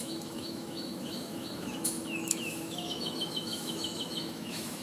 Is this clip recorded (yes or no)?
no